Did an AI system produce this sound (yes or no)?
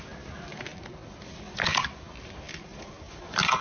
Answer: no